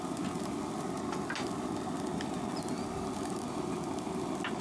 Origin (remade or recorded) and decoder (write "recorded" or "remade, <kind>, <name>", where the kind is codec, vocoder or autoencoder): recorded